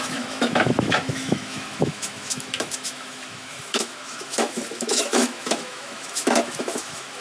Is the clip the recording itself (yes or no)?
no